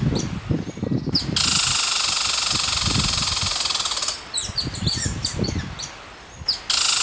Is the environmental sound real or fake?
real